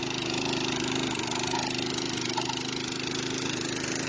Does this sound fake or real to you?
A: real